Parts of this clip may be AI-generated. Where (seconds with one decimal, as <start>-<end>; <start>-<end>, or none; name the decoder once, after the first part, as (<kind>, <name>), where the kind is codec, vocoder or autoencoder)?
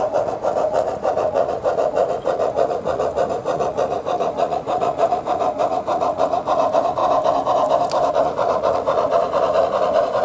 0.0-7.0 (vocoder, Vocos); 8.1-10.2